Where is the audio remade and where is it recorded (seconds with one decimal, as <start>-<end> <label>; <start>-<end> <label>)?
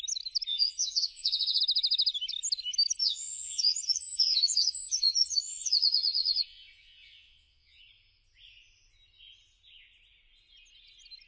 0.0-0.5 recorded; 0.5-1.6 remade; 1.6-3.0 recorded; 3.0-7.8 remade; 7.8-11.3 recorded